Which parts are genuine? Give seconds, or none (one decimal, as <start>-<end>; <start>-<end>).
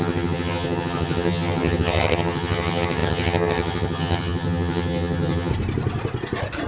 5.5-6.7